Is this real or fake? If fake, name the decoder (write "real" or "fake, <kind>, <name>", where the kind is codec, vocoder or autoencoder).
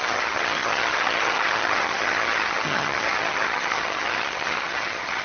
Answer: fake, vocoder, HiFi-GAN